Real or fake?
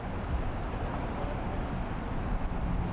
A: real